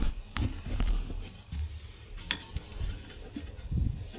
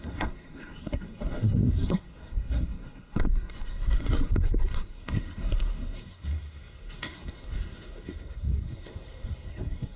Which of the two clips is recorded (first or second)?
first